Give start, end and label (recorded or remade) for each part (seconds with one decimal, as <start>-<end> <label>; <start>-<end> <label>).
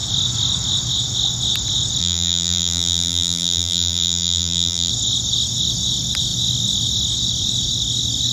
0.0-2.0 recorded; 2.0-4.9 remade; 4.9-8.3 recorded